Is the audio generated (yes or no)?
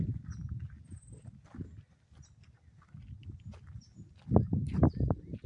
no